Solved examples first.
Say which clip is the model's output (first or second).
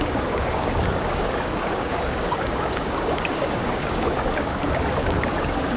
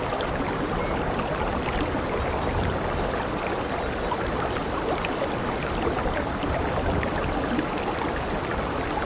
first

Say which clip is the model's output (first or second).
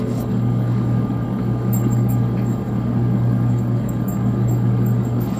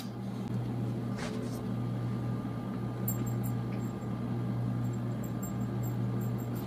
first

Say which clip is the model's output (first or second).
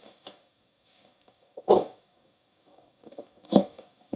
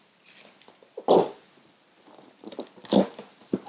first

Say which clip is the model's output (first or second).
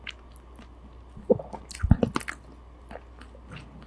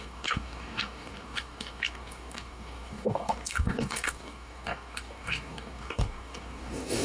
second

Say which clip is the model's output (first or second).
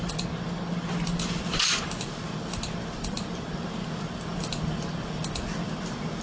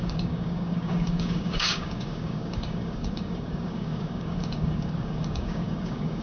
second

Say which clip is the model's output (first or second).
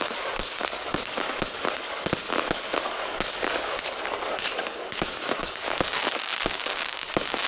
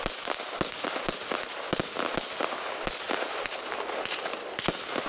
first